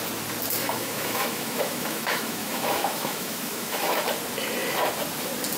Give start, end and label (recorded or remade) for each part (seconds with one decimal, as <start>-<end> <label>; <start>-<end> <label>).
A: 0.0-0.6 recorded; 0.6-4.0 remade; 4.0-5.6 recorded